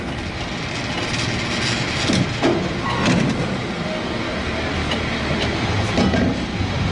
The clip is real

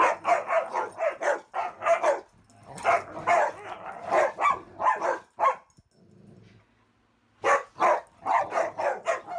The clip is real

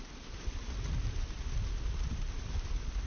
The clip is real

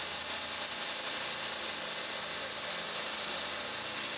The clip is real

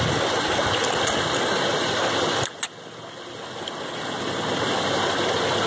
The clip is real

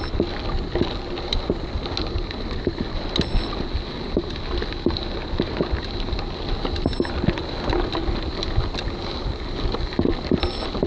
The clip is real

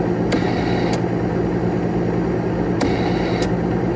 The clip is real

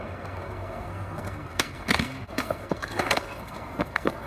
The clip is fake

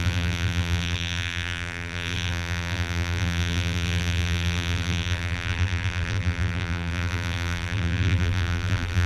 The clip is fake